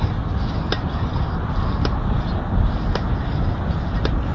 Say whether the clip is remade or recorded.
recorded